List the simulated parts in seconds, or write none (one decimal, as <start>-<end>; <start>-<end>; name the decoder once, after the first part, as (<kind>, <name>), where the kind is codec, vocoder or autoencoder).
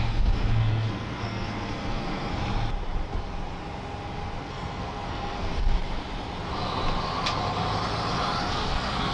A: 0.0-2.4 (codec, SNAC); 4.4-5.5; 8.5-9.1